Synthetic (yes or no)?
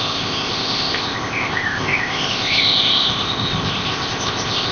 yes